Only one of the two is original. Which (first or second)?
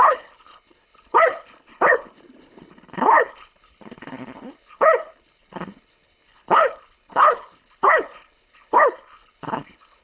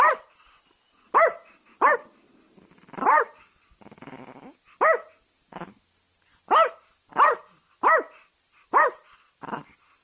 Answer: second